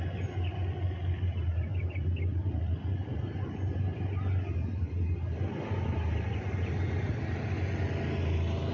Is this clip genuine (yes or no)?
yes